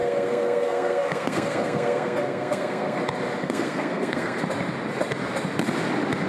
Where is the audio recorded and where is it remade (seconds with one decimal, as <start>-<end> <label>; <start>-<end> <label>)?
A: 0.0-3.0 remade; 3.0-3.4 recorded; 3.4-4.4 remade; 4.4-6.3 recorded